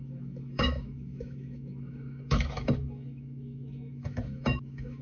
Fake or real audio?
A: fake